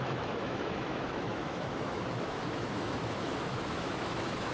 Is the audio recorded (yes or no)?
no